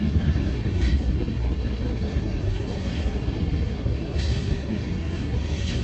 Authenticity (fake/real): fake